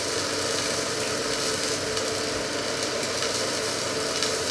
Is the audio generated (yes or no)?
no